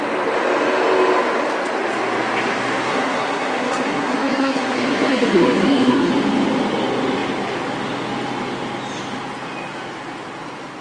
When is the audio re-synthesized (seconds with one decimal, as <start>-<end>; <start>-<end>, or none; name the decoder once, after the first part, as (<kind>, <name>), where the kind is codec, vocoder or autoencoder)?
2.9-6.1 (codec, SNAC)